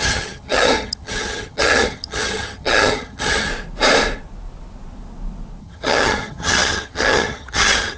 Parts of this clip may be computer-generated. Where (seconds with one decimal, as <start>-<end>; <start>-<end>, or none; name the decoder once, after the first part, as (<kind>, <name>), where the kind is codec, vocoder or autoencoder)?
0.0-3.5 (vocoder, HiFi-GAN); 5.6-8.0